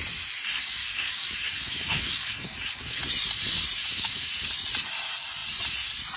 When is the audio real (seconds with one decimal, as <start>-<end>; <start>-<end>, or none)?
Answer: 0.0-0.8; 3.0-3.8; 4.3-6.2